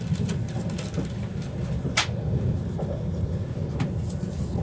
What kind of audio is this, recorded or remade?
recorded